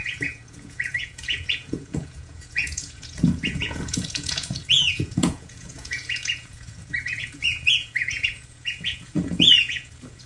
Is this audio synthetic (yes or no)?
yes